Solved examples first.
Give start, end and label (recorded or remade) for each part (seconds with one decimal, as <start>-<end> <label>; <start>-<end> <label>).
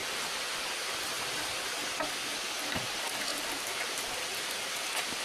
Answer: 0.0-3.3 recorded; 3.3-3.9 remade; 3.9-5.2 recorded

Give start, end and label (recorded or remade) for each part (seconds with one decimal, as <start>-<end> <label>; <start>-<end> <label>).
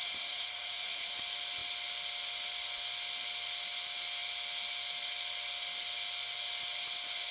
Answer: 0.0-1.1 remade; 1.1-7.3 recorded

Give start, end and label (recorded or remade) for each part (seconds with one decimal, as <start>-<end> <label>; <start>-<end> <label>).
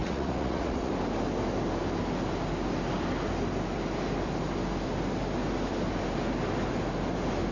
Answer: 0.0-0.9 remade; 0.9-7.5 recorded